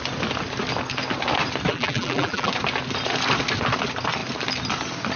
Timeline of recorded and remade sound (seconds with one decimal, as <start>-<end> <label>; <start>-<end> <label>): 0.0-1.7 recorded; 1.7-2.5 remade; 2.5-5.2 recorded